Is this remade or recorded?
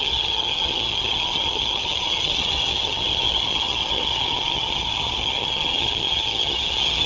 remade